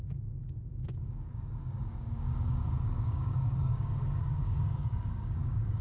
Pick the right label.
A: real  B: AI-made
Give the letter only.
B